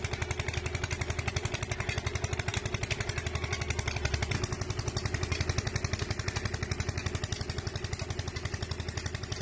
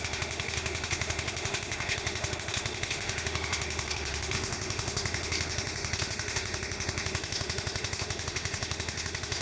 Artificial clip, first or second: second